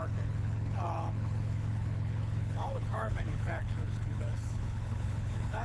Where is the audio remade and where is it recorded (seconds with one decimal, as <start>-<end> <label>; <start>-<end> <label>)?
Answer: 0.0-5.6 remade

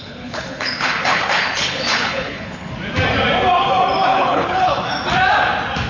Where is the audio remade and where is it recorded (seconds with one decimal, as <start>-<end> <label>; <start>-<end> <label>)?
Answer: 0.0-2.7 remade; 2.7-4.1 recorded; 4.1-4.8 remade; 4.8-5.9 recorded

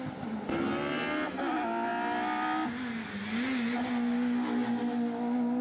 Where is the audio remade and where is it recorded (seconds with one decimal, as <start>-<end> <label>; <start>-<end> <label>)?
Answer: 0.0-5.6 recorded

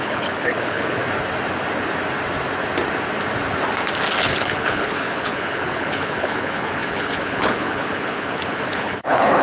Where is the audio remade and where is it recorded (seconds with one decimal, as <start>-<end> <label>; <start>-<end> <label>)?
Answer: 0.0-1.0 remade; 1.0-4.2 recorded; 4.2-9.4 remade

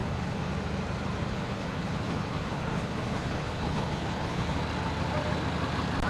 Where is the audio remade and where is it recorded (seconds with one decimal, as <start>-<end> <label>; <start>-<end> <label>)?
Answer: 0.0-0.5 remade; 0.5-1.3 recorded; 1.3-4.6 remade; 4.6-6.1 recorded

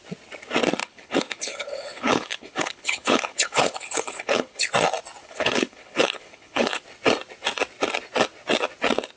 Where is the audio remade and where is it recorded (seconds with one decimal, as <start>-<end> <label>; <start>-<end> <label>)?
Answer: 0.0-0.8 recorded; 0.8-4.7 remade; 4.7-5.2 recorded; 5.2-6.8 remade; 6.8-9.2 recorded

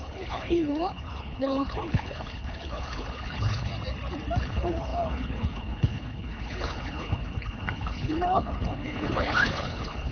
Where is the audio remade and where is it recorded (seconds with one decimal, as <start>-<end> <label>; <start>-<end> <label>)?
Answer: 0.0-3.7 remade; 3.7-4.4 recorded; 4.4-10.1 remade